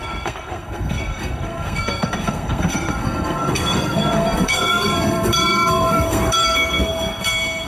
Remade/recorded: remade